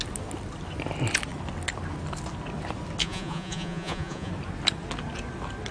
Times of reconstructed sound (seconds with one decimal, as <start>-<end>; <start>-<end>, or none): 3.0-4.3